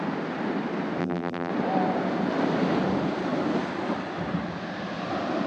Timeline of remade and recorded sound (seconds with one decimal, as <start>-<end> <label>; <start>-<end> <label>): 0.0-1.0 recorded; 1.0-1.5 remade; 1.5-5.5 recorded